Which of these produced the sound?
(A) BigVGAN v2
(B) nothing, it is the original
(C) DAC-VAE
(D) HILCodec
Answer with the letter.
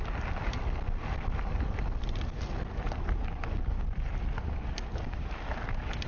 B